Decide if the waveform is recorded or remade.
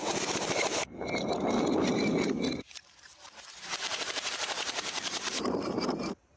remade